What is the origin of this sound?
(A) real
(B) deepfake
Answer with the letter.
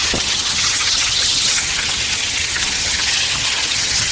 B